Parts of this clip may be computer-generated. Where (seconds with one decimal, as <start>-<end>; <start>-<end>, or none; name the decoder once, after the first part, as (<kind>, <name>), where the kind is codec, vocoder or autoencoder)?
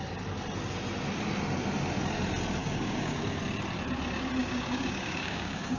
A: 2.6-3.4 (codec, DAC); 4.4-5.8